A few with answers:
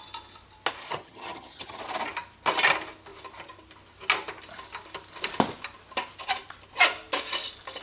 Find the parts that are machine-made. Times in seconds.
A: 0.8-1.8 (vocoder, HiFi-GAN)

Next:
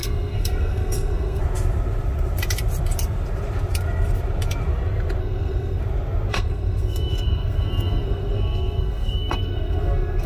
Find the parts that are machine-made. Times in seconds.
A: 0.0-1.4 (codec, SNAC); 5.2-5.8; 6.3-10.3

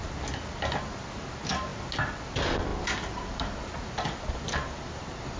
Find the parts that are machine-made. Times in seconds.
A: none